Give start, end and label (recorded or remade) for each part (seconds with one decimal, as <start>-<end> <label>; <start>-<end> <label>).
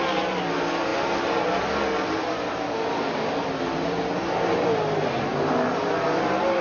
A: 0.0-6.6 recorded